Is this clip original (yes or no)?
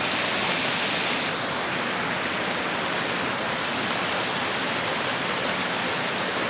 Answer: yes